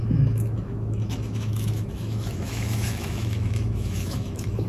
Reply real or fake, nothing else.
fake